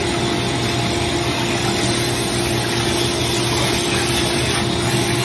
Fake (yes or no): no